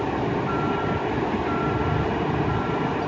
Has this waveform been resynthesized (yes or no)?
no